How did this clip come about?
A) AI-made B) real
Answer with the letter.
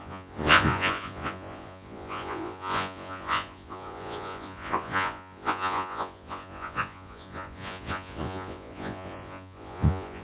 A